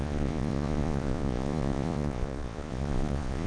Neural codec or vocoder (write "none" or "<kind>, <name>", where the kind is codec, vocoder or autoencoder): vocoder, Vocos